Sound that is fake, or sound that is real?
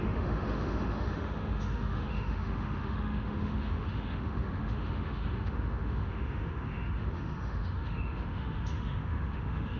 fake